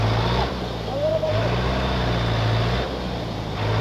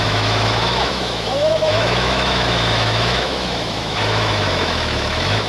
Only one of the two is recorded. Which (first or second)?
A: first